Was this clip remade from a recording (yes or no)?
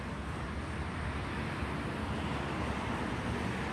no